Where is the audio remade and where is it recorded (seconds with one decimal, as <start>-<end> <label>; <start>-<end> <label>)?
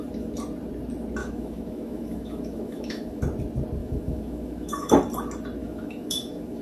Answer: 0.0-1.2 recorded; 1.2-3.2 remade; 3.2-3.8 recorded; 3.8-4.9 remade; 4.9-5.6 recorded; 5.6-6.6 remade